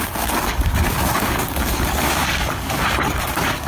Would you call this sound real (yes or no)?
no